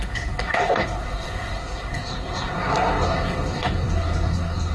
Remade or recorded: remade